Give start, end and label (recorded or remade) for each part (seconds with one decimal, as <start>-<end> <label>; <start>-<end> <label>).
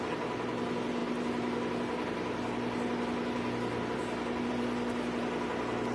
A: 0.0-5.9 recorded